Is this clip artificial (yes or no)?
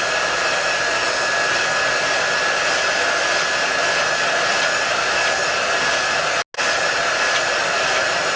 no